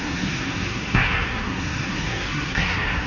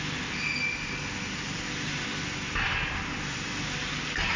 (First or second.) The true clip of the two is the second